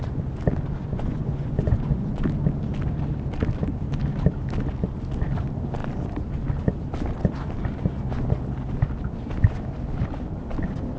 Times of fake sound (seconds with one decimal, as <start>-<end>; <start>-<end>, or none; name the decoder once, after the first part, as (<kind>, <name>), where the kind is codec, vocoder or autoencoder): 0.8-2.2 (vocoder, Vocos)